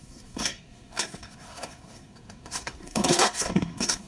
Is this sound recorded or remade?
remade